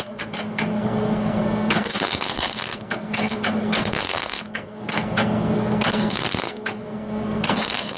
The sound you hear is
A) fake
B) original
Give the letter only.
A